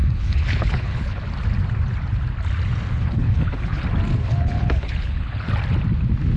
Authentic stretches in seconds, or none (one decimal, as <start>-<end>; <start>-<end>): 1.2-2.9; 3.8-4.3; 5.5-6.4